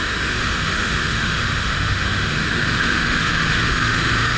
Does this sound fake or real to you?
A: fake